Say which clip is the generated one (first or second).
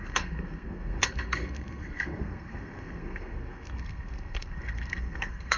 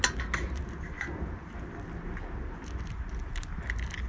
first